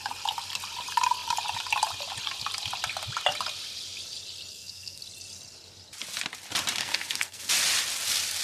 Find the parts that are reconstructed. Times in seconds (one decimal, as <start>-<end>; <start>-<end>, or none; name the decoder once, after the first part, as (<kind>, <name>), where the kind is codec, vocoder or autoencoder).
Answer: 4.5-5.0 (codec, SNAC); 6.8-7.5